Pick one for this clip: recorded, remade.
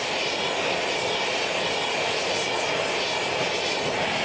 recorded